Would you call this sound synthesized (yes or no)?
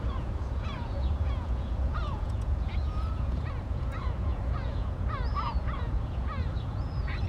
yes